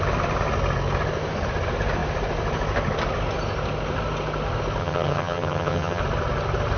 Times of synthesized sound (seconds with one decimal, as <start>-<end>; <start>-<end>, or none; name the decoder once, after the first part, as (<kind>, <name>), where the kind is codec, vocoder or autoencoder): 4.8-6.0 (vocoder, HiFi-GAN)

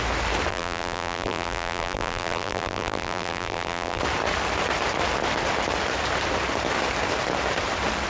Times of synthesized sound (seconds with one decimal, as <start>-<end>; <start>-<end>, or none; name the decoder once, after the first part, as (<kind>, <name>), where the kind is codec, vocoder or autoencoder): 0.5-4.0 (vocoder, BigVGAN v2)

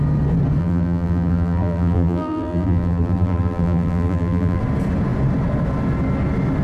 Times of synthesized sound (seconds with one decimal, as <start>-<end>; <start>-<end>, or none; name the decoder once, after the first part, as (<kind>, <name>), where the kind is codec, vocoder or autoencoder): 0.6-4.6 (vocoder, BigVGAN v2)

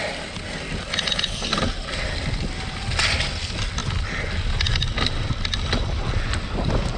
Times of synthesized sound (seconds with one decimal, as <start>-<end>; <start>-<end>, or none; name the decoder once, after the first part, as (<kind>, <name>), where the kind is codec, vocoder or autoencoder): none

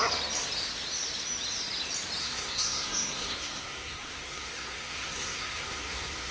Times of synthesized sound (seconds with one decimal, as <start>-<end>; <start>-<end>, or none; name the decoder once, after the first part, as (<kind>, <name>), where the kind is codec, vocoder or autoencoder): 2.2-6.3 (codec, SNAC)

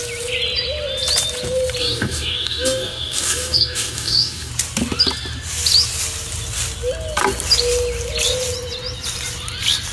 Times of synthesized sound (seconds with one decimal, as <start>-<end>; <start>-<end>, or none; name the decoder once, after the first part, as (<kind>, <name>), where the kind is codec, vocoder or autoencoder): 1.8-4.5 (codec, DAC)